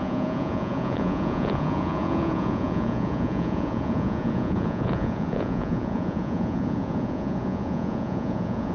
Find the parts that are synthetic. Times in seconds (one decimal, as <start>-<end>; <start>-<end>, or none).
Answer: 0.0-8.7